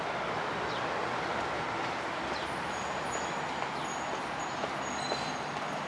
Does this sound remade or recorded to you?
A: recorded